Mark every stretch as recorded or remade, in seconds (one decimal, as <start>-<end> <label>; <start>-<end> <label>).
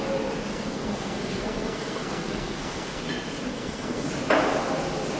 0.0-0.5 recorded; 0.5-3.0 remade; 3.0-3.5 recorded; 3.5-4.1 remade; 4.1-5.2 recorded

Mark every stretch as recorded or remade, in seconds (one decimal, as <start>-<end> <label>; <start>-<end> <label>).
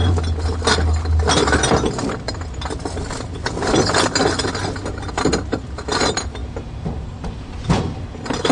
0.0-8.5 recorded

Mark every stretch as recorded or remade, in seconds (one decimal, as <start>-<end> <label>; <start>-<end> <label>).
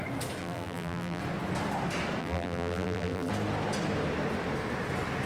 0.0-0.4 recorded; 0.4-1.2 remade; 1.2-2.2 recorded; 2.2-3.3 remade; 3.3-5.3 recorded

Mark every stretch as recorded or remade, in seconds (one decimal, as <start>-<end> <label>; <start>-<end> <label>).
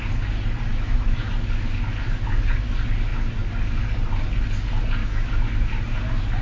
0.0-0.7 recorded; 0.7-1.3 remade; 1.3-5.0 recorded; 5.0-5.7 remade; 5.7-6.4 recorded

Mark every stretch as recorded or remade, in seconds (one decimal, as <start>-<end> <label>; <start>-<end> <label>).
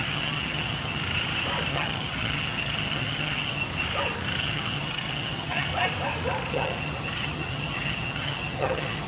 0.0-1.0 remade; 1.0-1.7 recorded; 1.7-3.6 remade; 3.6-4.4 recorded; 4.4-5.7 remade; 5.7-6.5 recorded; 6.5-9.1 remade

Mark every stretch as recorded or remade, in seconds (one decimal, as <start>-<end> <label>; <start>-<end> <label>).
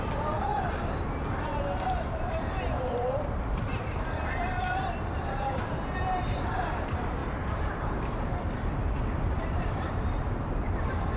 0.0-0.5 remade; 0.5-1.9 recorded; 1.9-11.2 remade